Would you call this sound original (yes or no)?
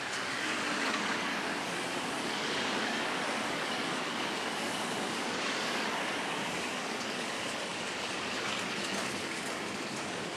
no